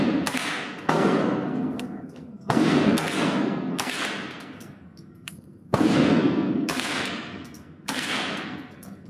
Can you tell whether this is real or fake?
fake